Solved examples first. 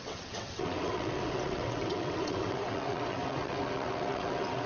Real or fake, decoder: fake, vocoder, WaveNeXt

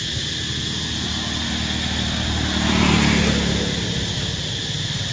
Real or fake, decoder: real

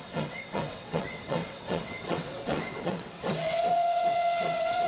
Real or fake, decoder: fake, vocoder, WaveNeXt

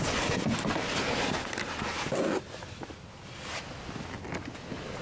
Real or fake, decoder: real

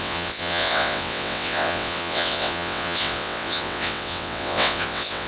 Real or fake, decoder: fake, vocoder, WaveNeXt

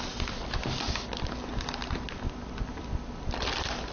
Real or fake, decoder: real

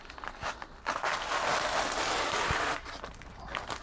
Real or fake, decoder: real